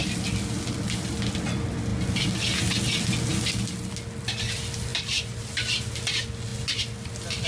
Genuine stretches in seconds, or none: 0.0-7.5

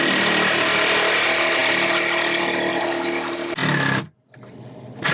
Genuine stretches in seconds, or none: 0.0-5.1

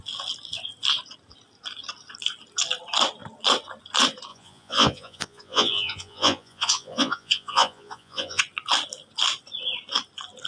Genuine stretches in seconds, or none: 0.0-4.3; 8.4-10.5

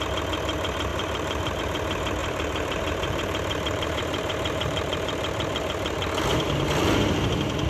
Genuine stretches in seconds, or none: 0.0-0.9; 1.6-2.2; 5.6-6.3; 6.8-7.7

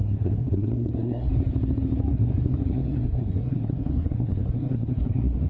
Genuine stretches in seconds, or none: 1.3-2.1

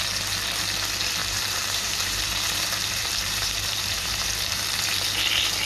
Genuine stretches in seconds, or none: 0.0-1.2; 4.6-5.7

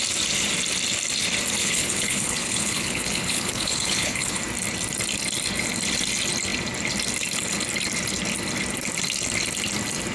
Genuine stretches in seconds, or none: 0.0-1.6; 4.4-10.1